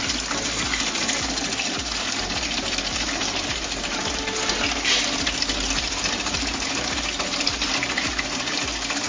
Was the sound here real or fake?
real